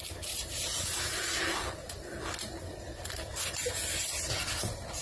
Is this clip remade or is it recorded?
recorded